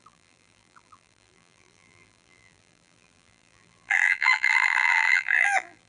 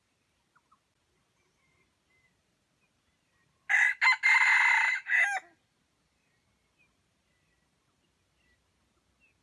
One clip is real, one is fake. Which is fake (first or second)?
first